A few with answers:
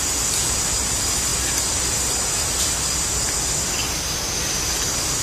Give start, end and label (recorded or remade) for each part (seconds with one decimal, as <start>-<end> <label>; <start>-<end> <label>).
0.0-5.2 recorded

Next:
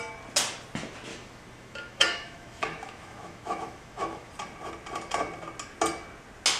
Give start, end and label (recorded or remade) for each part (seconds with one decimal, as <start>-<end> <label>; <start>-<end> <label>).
0.0-1.1 recorded; 1.1-4.3 remade; 4.3-6.6 recorded

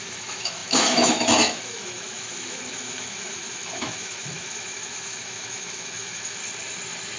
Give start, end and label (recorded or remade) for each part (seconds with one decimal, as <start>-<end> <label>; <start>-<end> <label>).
0.0-6.4 remade; 6.4-7.2 recorded

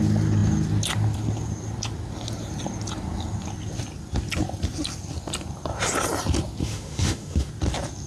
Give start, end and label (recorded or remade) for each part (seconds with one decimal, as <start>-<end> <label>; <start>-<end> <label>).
0.0-6.6 recorded; 6.6-7.5 remade; 7.5-8.1 recorded

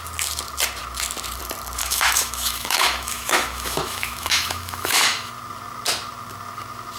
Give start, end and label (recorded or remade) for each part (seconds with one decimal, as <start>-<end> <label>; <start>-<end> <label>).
0.0-1.8 recorded; 1.8-5.3 remade; 5.3-7.0 recorded

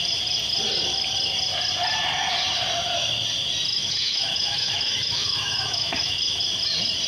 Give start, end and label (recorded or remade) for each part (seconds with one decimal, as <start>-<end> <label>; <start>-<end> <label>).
0.0-3.7 recorded; 3.7-6.4 remade; 6.4-7.1 recorded

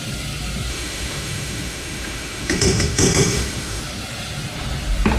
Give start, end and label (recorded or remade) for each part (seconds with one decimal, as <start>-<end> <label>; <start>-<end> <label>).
0.0-0.7 recorded; 0.7-3.8 remade; 3.8-5.2 recorded